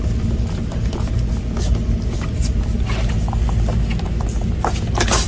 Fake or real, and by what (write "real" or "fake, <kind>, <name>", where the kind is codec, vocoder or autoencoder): real